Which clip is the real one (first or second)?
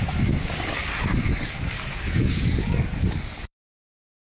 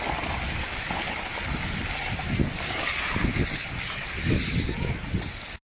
second